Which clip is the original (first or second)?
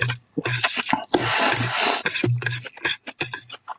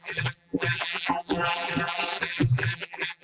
first